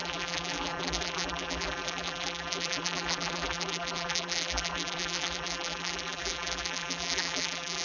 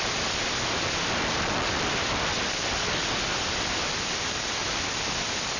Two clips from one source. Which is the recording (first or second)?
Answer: second